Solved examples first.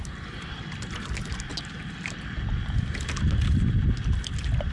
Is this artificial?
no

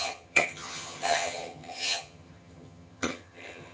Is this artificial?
yes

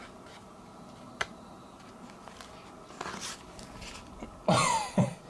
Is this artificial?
no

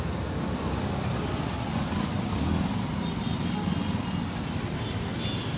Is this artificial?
no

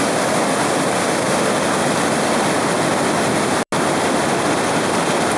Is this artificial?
no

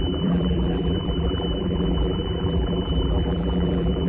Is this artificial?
yes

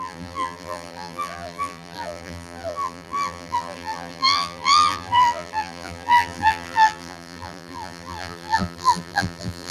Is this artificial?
yes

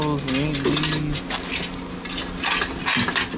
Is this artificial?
no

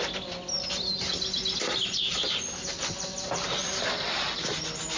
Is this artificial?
no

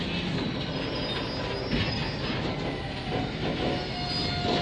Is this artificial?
no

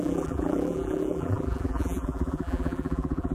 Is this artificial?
yes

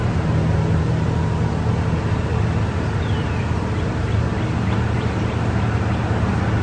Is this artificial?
no